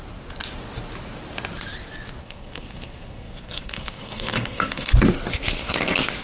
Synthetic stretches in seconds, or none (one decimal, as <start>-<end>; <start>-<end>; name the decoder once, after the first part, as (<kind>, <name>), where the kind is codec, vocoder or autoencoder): 2.2-4.9 (codec, SNAC)